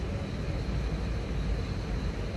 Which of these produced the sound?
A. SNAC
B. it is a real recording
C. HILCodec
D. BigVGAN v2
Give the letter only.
B